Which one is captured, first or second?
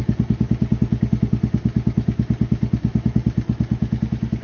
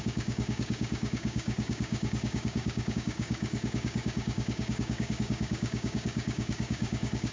first